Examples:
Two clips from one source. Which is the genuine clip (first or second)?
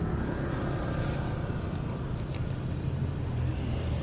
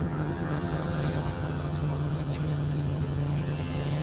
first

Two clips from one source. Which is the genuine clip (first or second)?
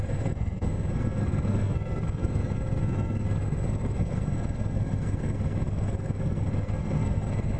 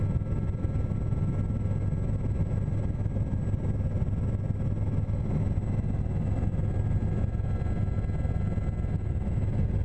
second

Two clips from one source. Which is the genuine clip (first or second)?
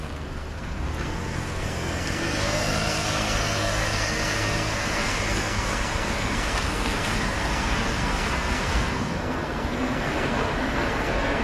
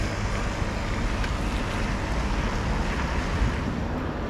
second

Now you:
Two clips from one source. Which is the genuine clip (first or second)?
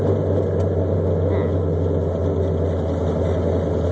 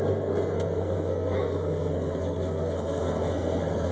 first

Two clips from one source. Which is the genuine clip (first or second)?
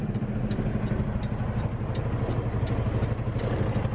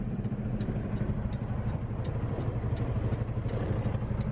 first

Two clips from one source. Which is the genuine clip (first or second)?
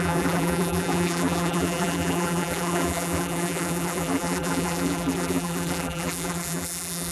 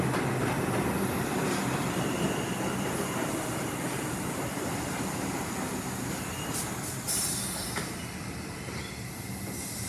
second